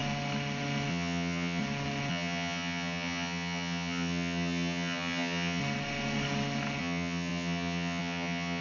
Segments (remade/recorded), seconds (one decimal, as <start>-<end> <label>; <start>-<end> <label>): 0.0-0.9 recorded; 0.9-1.6 remade; 1.6-2.1 recorded; 2.1-5.6 remade; 5.6-6.8 recorded; 6.8-8.6 remade